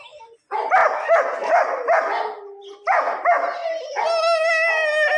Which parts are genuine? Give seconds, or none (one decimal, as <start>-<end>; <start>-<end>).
0.0-5.2